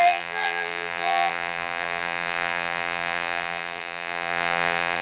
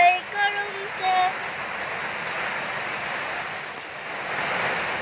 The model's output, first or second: first